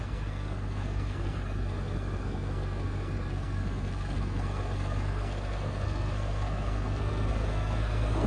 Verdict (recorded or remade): remade